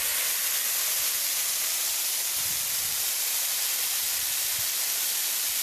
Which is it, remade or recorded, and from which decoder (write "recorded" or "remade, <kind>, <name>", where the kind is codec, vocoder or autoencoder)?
recorded